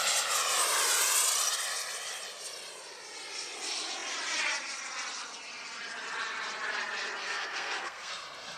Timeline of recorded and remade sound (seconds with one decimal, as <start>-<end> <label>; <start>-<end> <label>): 0.0-7.2 recorded; 7.2-8.1 remade; 8.1-8.6 recorded